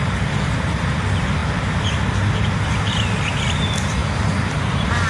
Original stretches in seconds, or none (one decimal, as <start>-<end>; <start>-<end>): 0.0-5.1